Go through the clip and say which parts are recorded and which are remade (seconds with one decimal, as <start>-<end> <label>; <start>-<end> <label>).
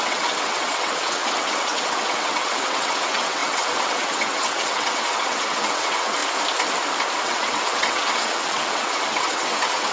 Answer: 0.0-6.2 remade; 6.2-7.2 recorded; 7.2-9.9 remade